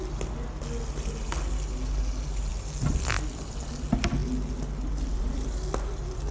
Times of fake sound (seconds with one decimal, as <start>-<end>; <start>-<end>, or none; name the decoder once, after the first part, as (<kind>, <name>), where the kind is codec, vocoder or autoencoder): none